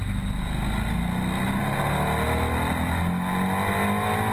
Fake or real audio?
real